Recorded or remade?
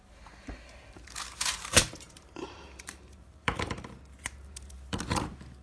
remade